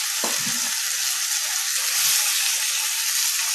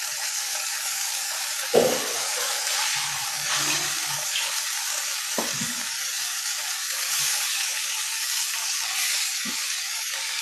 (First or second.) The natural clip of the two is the first